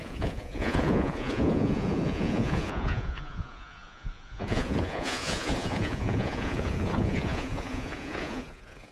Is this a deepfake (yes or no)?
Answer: yes